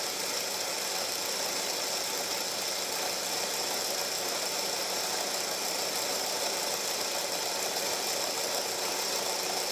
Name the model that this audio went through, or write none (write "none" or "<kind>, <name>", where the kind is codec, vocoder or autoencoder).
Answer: none